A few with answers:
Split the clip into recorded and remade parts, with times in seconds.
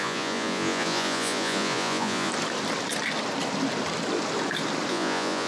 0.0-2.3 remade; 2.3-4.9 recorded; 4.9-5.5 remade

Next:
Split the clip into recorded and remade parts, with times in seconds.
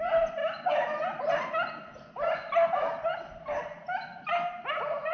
0.0-5.1 recorded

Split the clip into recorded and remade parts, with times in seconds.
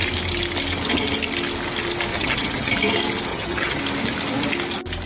0.0-2.1 recorded; 2.1-2.7 remade; 2.7-3.3 recorded; 3.3-3.8 remade; 3.8-5.1 recorded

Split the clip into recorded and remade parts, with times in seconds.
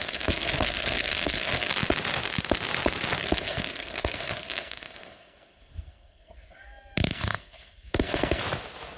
0.0-1.7 remade; 1.7-3.2 recorded; 3.2-8.4 remade; 8.4-9.0 recorded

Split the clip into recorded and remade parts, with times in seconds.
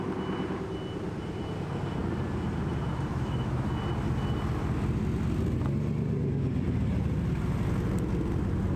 0.0-3.1 recorded; 3.1-3.8 remade; 3.8-8.8 recorded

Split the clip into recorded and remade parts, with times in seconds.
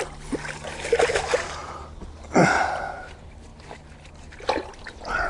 0.0-5.3 recorded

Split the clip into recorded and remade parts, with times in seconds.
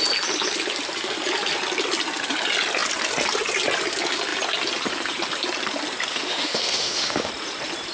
0.0-6.1 recorded; 6.1-7.3 remade; 7.3-7.9 recorded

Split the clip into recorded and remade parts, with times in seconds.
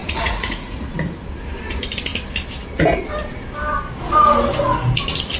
0.0-0.9 remade; 0.9-5.4 recorded